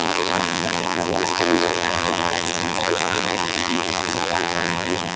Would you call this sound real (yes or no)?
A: no